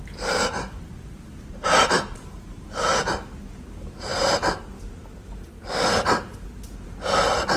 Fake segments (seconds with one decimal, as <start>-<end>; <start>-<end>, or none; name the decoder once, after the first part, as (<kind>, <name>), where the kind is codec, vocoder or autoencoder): 0.0-5.5 (vocoder, BigVGAN v2)